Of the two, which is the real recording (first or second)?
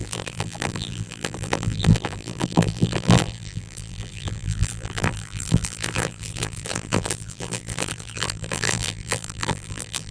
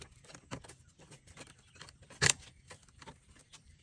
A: second